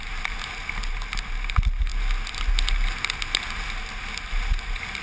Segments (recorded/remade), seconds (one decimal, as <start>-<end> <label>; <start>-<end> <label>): 0.0-5.0 recorded